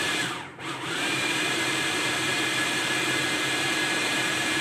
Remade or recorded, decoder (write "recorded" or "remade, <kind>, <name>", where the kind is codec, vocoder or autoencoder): remade, vocoder, BigVGAN v2